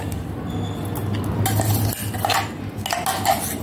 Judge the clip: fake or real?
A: real